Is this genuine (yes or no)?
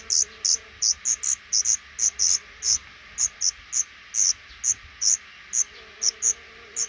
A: yes